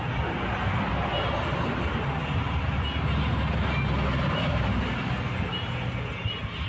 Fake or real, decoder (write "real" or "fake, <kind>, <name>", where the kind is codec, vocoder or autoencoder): real